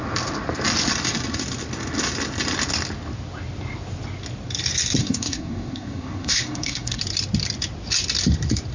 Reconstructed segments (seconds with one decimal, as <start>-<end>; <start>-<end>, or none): 5.0-7.0